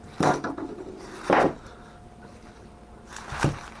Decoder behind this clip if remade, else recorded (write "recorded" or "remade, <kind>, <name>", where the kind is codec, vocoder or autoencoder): recorded